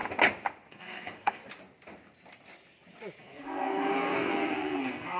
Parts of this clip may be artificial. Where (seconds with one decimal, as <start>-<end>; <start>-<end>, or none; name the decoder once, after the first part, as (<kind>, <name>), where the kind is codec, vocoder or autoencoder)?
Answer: 0.7-1.4 (codec, SNAC); 3.2-5.2